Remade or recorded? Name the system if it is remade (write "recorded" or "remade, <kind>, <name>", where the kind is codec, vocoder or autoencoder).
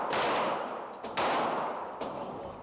recorded